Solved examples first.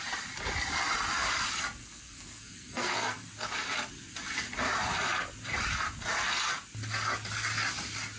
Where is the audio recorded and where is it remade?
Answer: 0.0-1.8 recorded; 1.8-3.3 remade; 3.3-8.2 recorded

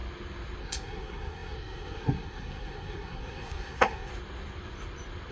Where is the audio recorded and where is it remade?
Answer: 0.0-0.6 recorded; 0.6-4.1 remade; 4.1-5.3 recorded